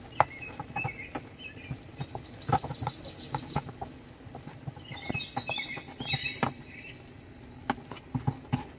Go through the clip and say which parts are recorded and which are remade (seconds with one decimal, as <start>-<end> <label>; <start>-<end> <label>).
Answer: 0.0-8.8 recorded